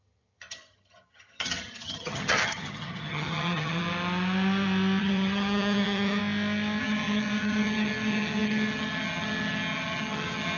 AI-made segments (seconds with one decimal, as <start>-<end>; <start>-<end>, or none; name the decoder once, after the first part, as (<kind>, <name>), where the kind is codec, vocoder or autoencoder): 0.0-3.8 (vocoder, HiFi-GAN); 5.0-6.2; 6.8-10.6

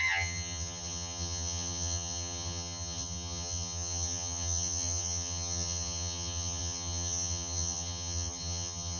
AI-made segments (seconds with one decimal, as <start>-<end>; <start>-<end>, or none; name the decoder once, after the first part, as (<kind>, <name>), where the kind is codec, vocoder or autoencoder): 0.0-9.0 (vocoder, HiFi-GAN)